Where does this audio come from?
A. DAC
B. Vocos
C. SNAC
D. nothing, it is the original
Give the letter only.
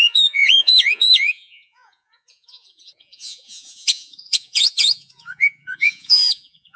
B